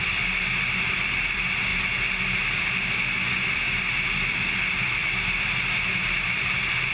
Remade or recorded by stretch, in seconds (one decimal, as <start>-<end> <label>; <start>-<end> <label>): 0.0-6.9 recorded